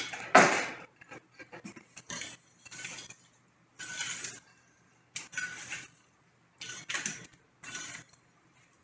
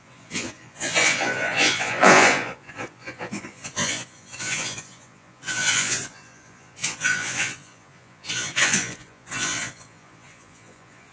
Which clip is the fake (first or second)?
second